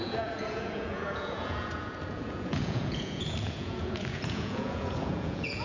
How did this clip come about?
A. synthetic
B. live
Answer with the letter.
A